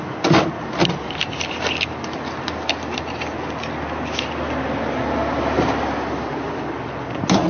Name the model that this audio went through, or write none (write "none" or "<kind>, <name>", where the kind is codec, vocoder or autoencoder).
none